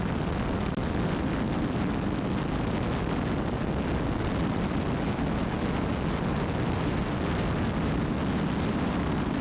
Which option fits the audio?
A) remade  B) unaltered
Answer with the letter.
B